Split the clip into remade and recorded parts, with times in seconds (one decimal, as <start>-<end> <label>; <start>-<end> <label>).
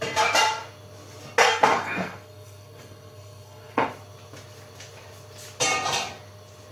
0.0-1.4 recorded; 1.4-3.9 remade; 3.9-6.7 recorded